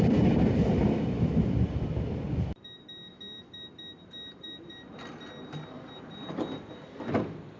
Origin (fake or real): real